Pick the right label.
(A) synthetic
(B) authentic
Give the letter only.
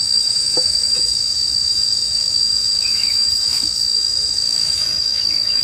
A